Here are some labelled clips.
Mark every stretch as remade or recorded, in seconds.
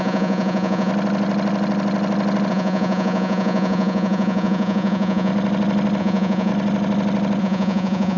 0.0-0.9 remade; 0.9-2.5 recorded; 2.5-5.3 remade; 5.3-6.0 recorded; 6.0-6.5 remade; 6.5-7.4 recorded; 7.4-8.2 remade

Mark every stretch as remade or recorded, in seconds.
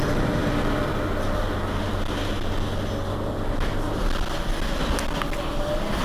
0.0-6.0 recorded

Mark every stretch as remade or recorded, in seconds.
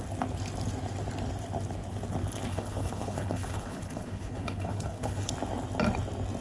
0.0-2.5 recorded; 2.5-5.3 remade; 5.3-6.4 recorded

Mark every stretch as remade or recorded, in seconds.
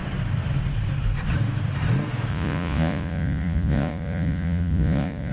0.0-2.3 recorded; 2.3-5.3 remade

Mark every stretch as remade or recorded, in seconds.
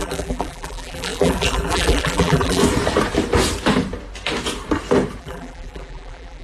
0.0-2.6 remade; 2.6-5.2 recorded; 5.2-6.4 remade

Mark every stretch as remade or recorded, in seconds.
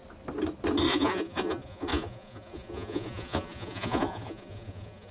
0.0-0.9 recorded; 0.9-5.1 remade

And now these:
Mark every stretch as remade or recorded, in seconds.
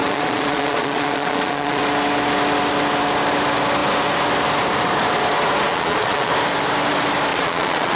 0.0-1.8 remade; 1.8-5.7 recorded; 5.7-6.3 remade; 6.3-7.3 recorded; 7.3-8.0 remade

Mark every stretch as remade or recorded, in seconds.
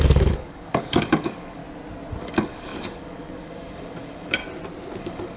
0.0-1.6 remade; 1.6-2.2 recorded; 2.2-4.4 remade; 4.4-5.0 recorded; 5.0-5.4 remade